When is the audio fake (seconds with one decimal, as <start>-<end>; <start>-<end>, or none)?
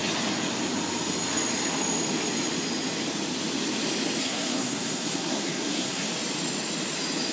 4.2-6.1